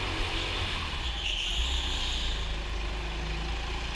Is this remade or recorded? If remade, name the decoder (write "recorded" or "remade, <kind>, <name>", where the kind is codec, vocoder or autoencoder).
recorded